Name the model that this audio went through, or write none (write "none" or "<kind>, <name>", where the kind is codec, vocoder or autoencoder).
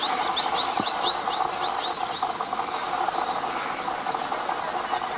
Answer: none